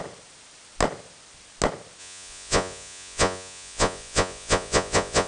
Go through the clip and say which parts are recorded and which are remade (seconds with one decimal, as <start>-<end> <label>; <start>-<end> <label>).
0.0-2.0 recorded; 2.0-5.3 remade